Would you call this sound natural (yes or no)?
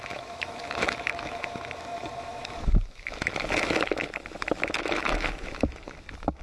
no